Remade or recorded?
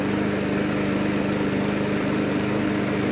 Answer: recorded